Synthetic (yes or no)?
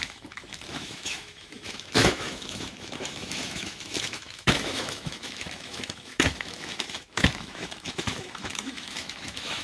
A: yes